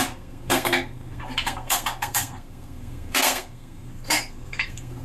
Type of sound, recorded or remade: remade